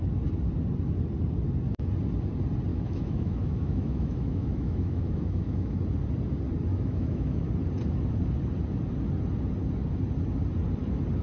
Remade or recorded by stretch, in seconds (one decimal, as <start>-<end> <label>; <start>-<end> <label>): 0.0-2.7 recorded; 2.7-5.8 remade; 5.8-6.7 recorded; 6.7-7.5 remade; 7.5-11.2 recorded